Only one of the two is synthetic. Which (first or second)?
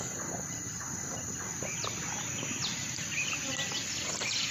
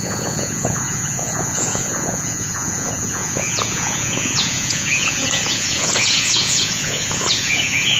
second